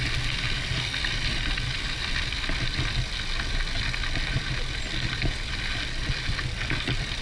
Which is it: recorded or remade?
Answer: recorded